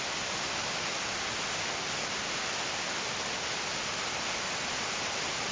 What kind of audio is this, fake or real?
real